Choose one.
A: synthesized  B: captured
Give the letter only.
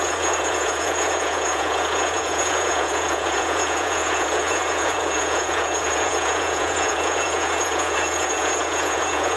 A